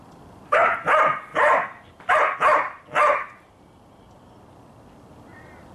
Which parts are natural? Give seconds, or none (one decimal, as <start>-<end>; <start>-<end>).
0.0-5.7